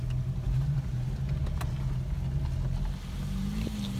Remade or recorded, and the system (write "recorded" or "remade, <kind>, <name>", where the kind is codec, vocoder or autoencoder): recorded